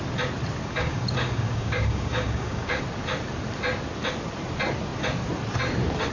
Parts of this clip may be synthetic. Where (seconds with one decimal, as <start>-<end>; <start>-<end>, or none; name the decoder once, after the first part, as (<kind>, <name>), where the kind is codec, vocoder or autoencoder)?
0.6-2.8 (codec, DAC)